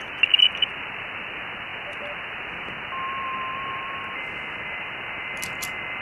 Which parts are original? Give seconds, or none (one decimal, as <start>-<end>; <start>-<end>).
0.0-6.0